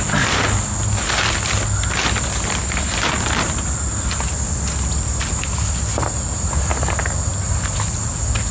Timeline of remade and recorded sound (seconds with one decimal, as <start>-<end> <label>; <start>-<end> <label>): 0.0-8.5 recorded